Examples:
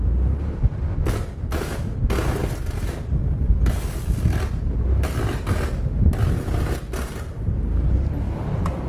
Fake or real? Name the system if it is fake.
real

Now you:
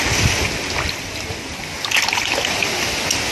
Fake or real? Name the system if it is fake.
real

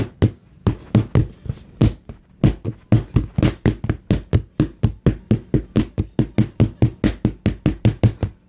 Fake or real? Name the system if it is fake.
real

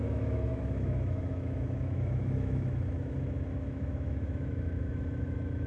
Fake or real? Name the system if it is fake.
fake, autoencoder, DAC-VAE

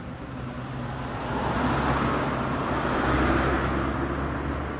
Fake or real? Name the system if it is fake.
real